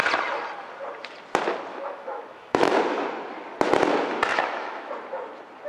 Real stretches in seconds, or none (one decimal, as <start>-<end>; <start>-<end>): 0.0-1.7; 2.8-4.3; 4.9-5.7